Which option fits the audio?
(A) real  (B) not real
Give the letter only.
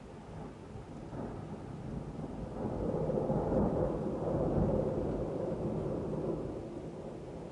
A